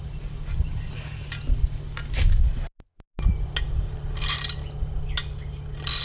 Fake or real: real